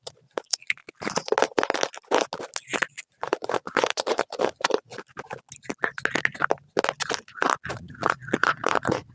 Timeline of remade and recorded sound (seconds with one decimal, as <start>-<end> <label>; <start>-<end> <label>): 0.0-0.8 remade; 0.8-2.9 recorded; 2.9-4.9 remade; 4.9-7.7 recorded; 7.7-9.1 remade

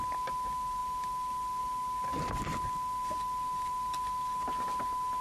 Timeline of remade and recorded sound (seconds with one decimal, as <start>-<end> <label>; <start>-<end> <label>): 0.0-5.2 recorded

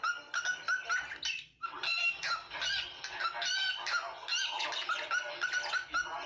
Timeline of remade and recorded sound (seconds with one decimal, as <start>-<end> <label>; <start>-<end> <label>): 0.0-6.3 recorded

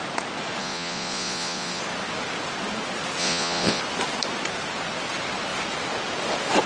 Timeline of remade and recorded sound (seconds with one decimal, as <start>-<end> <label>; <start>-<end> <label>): 0.0-0.6 recorded; 0.6-1.8 remade; 1.8-3.2 recorded; 3.2-3.8 remade; 3.8-6.7 recorded

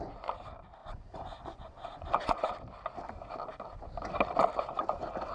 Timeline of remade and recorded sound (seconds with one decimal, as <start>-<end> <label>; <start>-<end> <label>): 0.0-0.8 recorded; 0.8-2.4 remade; 2.4-5.3 recorded